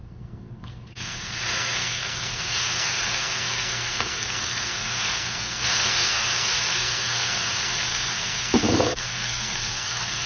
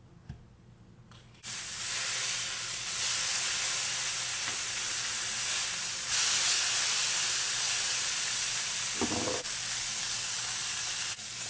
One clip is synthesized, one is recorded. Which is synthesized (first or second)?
first